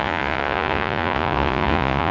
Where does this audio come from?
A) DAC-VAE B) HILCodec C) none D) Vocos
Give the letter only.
D